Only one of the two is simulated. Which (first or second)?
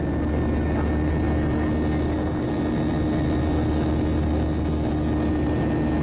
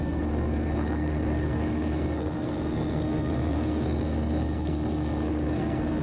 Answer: second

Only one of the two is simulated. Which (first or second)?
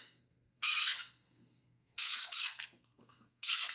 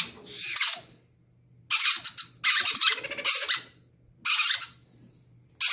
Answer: first